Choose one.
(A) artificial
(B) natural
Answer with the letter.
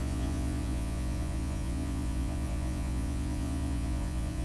A